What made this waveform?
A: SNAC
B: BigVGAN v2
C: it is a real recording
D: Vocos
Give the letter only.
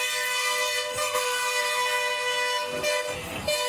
A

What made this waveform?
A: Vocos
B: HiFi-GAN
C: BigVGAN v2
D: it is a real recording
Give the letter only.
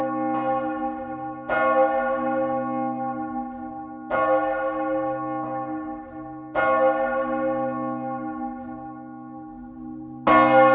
D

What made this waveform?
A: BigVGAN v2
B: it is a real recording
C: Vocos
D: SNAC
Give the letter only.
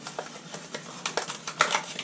B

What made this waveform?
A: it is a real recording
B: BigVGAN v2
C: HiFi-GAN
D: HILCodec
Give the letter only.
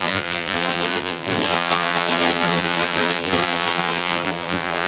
B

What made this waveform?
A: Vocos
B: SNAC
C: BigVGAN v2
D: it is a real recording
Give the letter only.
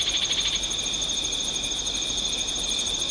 D